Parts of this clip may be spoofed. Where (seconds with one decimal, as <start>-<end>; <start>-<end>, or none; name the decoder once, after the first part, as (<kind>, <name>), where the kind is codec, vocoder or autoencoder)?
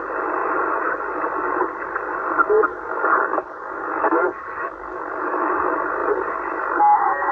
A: 2.7-5.5 (codec, DAC)